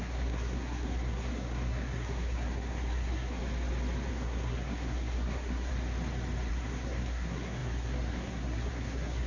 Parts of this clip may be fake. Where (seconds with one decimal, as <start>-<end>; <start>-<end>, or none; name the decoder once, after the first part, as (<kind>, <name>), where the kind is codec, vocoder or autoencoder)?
0.0-3.4 (codec, SNAC); 4.1-5.7; 6.5-9.3